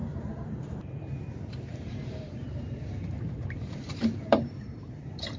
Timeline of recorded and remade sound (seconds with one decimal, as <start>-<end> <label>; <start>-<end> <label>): 0.0-5.4 remade